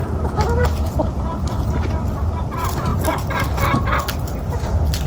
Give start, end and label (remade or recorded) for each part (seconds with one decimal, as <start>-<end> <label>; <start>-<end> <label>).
0.0-2.9 remade; 2.9-5.1 recorded